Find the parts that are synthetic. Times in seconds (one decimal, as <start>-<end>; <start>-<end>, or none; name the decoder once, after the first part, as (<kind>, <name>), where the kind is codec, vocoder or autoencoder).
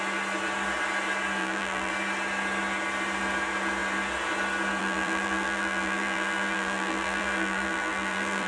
1.4-1.9 (vocoder, BigVGAN v2); 4.8-8.5